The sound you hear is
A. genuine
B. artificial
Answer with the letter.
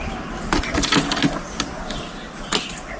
A